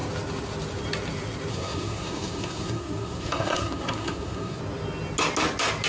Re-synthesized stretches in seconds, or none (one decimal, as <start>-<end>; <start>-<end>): 1.5-4.6